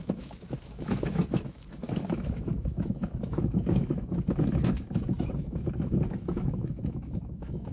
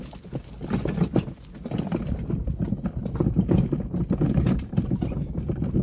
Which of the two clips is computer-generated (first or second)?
first